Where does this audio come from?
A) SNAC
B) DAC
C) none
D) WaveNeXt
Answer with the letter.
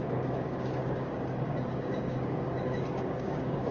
B